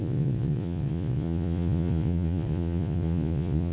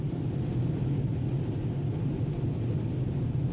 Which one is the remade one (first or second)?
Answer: first